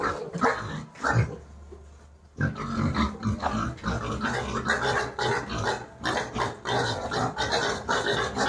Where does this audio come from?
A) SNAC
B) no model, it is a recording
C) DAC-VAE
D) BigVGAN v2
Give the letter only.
B